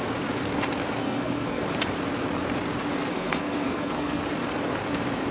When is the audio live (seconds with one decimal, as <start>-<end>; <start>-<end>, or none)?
0.0-1.0; 1.6-3.1; 4.2-5.3